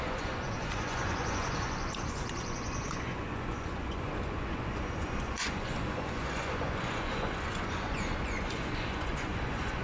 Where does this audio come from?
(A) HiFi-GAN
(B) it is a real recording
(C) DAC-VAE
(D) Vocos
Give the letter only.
D